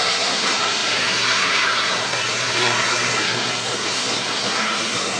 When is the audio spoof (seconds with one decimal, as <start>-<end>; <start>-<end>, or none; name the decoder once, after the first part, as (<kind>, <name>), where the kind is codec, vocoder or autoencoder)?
0.0-5.2 (codec, SNAC)